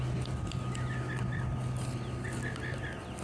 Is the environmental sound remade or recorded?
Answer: recorded